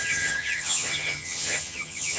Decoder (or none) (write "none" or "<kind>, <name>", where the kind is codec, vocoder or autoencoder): vocoder, HiFi-GAN